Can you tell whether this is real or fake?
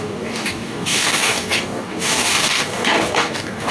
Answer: fake